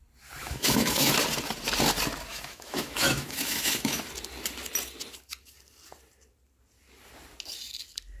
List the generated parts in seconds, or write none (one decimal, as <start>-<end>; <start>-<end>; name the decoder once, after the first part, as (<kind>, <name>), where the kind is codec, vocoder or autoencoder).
0.4-1.1 (autoencoder, DAC-VAE); 2.3-4.0

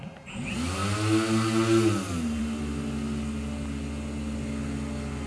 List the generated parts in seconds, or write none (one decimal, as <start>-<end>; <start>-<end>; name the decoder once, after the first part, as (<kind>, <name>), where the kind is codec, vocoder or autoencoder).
none

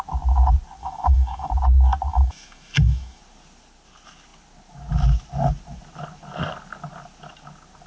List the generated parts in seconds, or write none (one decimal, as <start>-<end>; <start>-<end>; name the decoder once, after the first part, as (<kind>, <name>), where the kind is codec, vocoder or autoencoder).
0.8-1.5 (autoencoder, DAC-VAE); 2.1-3.2

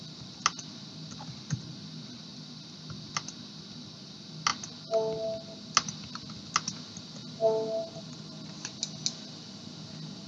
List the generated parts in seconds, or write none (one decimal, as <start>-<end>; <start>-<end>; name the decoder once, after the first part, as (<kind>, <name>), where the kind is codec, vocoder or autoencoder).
none

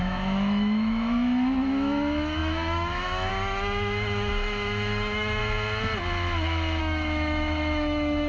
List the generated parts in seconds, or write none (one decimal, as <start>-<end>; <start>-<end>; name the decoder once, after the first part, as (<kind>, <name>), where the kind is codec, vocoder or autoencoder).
0.0-5.4 (autoencoder, DAC-VAE); 6.8-8.3

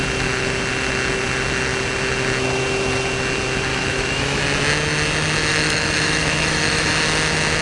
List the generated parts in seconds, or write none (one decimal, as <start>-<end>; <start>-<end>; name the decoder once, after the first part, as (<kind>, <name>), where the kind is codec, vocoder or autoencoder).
3.7-4.4 (autoencoder, DAC-VAE); 5.5-6.9